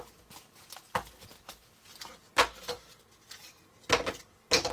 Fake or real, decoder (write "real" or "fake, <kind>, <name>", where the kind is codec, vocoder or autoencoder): real